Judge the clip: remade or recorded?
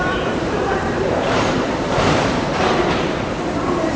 remade